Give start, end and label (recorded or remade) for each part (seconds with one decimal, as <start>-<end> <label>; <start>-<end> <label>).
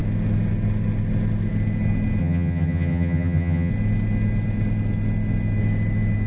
0.0-2.2 recorded; 2.2-3.7 remade; 3.7-6.3 recorded